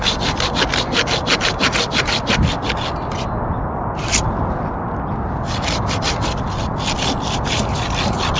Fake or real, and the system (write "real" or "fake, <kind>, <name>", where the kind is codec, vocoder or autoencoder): real